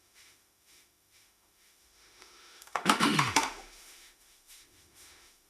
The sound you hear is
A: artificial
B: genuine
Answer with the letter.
A